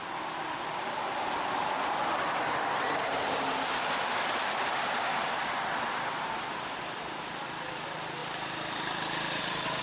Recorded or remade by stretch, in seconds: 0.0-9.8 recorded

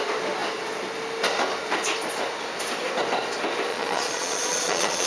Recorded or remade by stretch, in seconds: 0.0-3.7 recorded; 3.7-5.1 remade

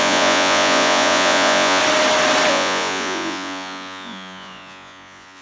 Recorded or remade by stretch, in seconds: 0.0-1.8 remade; 1.8-2.5 recorded; 2.5-5.4 remade

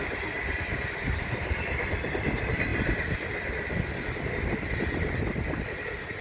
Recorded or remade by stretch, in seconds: 0.0-6.2 recorded

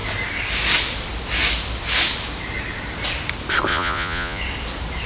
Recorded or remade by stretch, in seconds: 0.0-3.7 recorded; 3.7-4.4 remade; 4.4-5.1 recorded

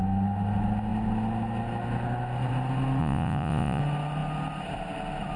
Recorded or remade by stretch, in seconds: 0.0-3.0 recorded; 3.0-3.8 remade; 3.8-5.4 recorded